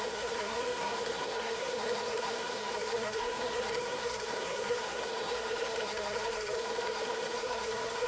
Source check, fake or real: fake